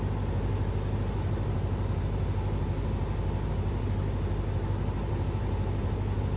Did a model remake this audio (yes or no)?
no